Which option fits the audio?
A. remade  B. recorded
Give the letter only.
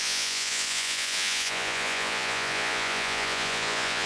A